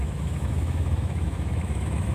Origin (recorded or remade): remade